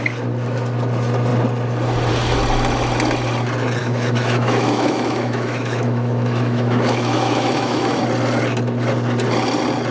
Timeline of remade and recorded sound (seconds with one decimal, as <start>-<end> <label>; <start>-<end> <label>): 0.0-3.8 recorded; 3.8-8.0 remade; 8.0-9.9 recorded

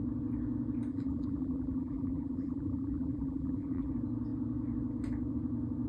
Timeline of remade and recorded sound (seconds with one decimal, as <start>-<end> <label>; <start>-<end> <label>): 0.0-0.9 recorded; 0.9-3.9 remade; 3.9-5.9 recorded

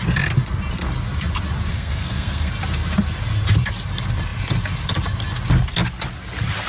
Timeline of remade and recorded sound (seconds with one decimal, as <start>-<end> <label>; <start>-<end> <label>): 0.0-1.7 recorded; 1.7-2.5 remade; 2.5-6.7 recorded

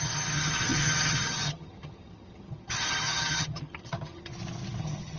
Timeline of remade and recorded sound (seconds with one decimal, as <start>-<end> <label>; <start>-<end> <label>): 0.0-4.3 remade; 4.3-4.8 recorded; 4.8-5.2 remade

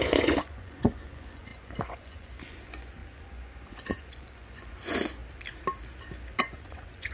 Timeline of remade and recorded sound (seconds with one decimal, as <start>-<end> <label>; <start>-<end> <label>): 0.0-5.2 remade; 5.2-6.4 recorded; 6.4-7.1 remade

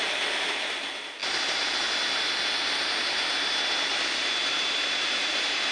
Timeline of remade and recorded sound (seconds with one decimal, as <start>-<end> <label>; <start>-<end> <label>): 0.0-5.7 recorded

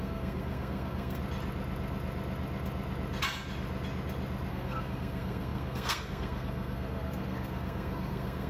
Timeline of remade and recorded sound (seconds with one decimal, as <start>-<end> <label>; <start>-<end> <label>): 0.0-1.2 remade; 1.2-4.5 recorded; 4.5-8.5 remade

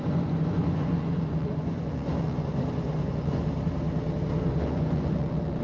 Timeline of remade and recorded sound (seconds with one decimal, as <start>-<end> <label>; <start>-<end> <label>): 0.0-3.4 remade; 3.4-4.5 recorded; 4.5-5.6 remade